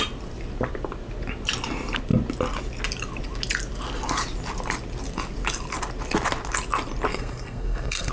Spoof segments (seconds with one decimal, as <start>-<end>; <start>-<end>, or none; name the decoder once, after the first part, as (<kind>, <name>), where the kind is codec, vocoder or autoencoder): 7.1-8.1 (codec, SNAC)